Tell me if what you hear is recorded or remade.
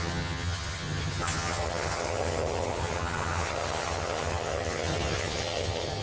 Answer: remade